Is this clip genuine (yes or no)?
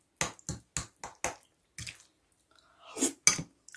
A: yes